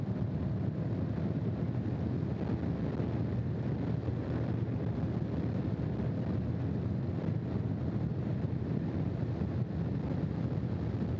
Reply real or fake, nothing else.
real